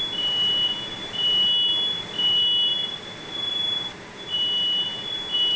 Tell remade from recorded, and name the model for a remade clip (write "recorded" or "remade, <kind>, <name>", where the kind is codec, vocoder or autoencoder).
recorded